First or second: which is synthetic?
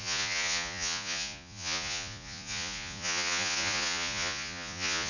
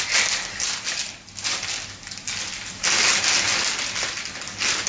first